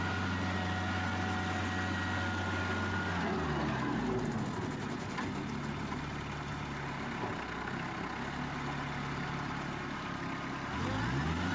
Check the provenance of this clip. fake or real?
real